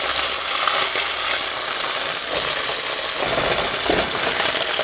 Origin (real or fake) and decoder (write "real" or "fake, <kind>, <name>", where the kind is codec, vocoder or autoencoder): real